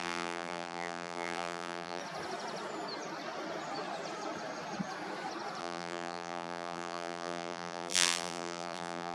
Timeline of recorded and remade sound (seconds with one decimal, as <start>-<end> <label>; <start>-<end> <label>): 0.0-2.0 remade; 2.0-5.6 recorded; 5.6-9.1 remade